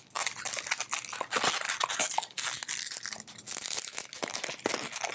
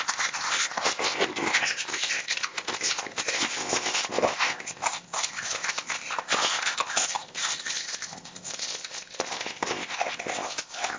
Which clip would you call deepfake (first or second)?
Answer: second